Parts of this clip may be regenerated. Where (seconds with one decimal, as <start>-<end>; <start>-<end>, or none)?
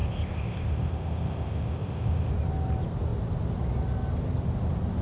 0.0-2.3